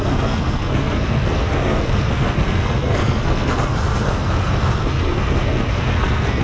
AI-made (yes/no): yes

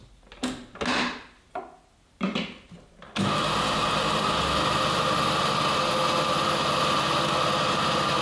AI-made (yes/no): no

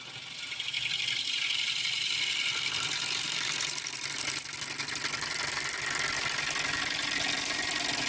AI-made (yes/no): no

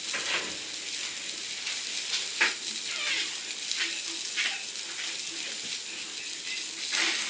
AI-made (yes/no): no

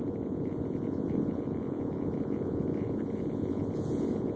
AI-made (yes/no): yes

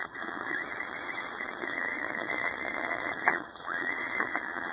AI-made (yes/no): yes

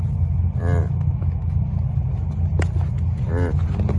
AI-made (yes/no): no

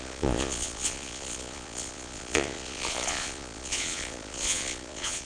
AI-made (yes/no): yes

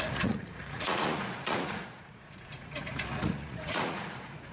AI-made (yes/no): yes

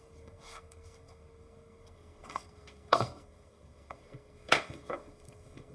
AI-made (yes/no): yes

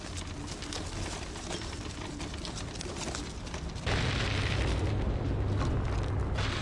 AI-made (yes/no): no